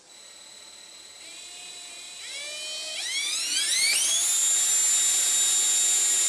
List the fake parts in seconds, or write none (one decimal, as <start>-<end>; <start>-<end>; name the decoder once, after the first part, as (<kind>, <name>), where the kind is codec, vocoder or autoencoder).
1.3-2.3 (vocoder, BigVGAN v2)